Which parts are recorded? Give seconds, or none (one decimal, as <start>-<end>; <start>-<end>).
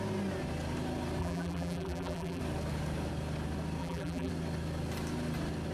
0.0-1.2; 2.4-3.8; 4.3-5.7